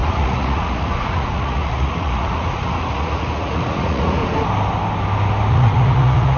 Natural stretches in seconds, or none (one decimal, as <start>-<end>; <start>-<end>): 4.2-5.5